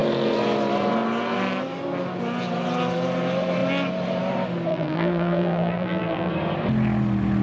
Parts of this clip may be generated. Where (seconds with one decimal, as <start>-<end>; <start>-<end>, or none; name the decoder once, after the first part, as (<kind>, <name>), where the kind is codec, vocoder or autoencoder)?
4.7-6.3 (vocoder, BigVGAN v2)